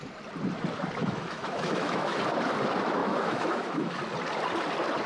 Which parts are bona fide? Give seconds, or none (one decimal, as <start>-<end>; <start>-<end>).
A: 0.0-1.0; 2.2-3.0; 4.0-5.1